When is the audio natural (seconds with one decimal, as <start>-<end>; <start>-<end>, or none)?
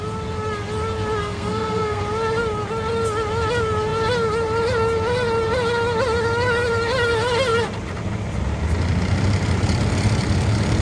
0.0-1.2; 2.0-10.8